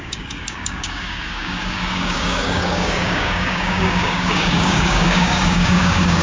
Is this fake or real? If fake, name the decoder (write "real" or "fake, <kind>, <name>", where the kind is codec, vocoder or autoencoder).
fake, codec, DAC